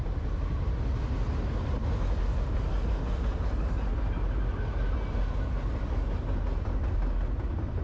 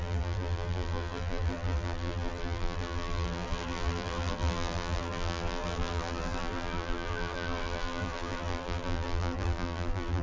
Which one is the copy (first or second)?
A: second